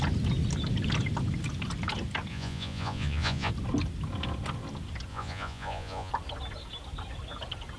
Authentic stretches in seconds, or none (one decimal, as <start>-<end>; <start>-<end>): 0.0-2.3; 3.5-5.1; 6.1-7.8